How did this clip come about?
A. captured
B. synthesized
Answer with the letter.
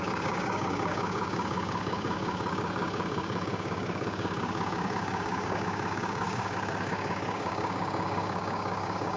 B